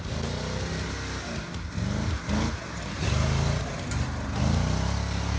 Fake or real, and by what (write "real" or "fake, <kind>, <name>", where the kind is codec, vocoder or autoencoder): real